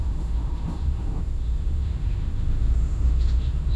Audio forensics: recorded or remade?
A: remade